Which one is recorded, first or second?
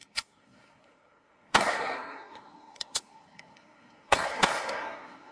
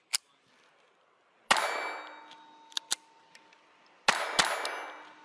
second